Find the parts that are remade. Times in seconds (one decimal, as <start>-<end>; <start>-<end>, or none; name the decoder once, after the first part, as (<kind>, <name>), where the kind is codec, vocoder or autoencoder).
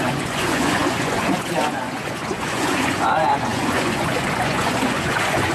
0.0-5.5 (vocoder, Vocos)